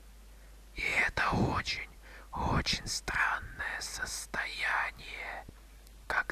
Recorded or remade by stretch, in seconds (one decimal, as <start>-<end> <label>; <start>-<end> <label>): 0.0-0.9 recorded; 0.9-1.6 remade; 1.6-6.3 recorded